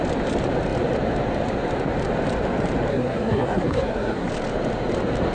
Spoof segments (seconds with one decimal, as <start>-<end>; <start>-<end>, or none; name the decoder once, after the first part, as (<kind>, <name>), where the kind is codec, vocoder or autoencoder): 2.9-4.3 (codec, SNAC)